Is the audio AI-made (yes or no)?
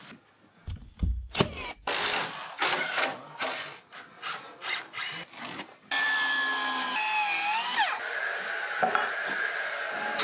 no